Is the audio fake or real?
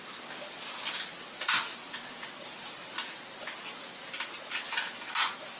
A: real